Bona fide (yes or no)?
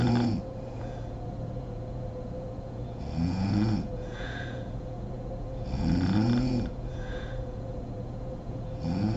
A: no